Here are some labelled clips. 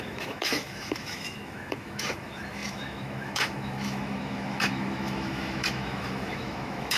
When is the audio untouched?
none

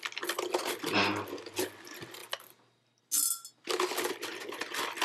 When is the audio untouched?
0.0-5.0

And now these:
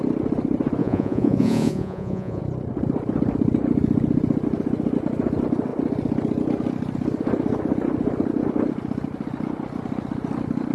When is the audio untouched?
0.0-0.8; 2.4-10.7

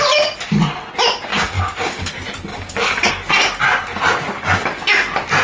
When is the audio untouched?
0.0-1.3; 2.1-2.5; 3.1-5.4

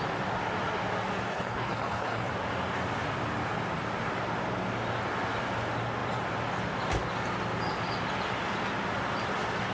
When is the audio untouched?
0.0-1.3; 2.3-9.7